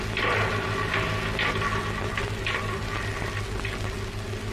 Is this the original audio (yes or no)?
yes